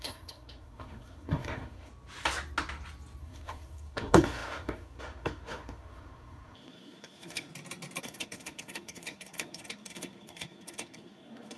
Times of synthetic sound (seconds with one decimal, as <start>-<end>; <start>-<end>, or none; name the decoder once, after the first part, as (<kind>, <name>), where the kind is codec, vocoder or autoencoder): 0.0-1.9 (codec, SNAC); 3.2-7.5; 8.0-11.6